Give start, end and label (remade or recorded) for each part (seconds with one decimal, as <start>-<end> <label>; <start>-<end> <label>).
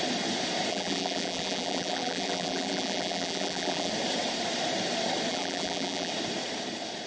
0.0-0.7 recorded; 0.7-3.9 remade; 3.9-5.3 recorded; 5.3-6.1 remade; 6.1-7.1 recorded